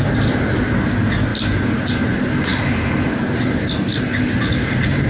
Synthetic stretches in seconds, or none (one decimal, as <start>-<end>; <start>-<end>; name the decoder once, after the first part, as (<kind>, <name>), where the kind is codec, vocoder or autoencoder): none